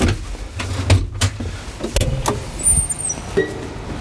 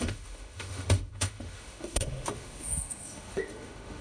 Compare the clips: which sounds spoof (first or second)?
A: second